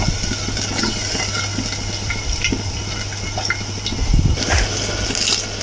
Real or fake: real